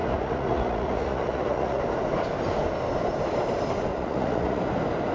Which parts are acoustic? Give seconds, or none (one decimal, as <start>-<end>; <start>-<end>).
1.8-3.9; 4.6-5.1

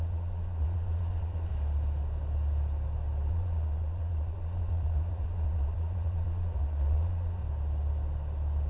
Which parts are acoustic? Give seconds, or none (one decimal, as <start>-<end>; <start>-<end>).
1.5-3.3; 7.4-8.7

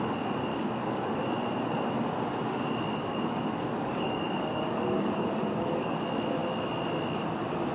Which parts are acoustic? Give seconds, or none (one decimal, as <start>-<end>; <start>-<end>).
0.0-0.5; 1.2-3.0; 6.0-7.7

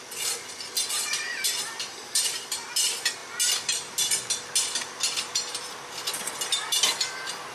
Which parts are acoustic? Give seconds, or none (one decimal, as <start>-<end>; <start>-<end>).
0.0-1.3; 2.2-7.5

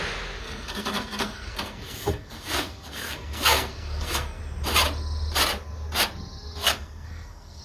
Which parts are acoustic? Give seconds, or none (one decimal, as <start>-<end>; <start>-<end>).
0.0-0.4; 4.4-6.6

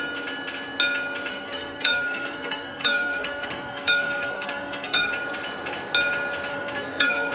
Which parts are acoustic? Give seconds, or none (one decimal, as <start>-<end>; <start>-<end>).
0.0-1.3; 5.1-6.5

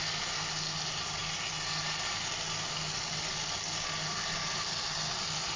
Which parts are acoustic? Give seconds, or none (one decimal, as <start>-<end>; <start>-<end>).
0.0-5.6